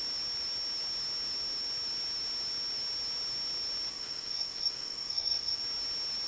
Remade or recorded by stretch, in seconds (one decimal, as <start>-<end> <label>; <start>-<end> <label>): 0.0-3.9 recorded; 3.9-5.6 remade; 5.6-6.3 recorded